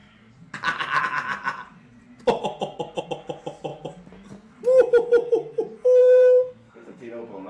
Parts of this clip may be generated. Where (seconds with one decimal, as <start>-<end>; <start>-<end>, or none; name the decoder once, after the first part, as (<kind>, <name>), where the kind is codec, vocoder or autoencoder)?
6.0-7.1 (codec, SNAC)